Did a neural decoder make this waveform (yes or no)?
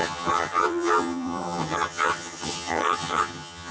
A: yes